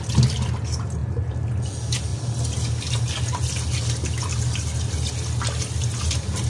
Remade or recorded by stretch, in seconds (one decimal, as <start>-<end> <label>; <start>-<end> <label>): 0.0-6.5 recorded